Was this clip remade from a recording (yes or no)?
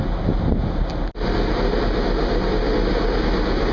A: no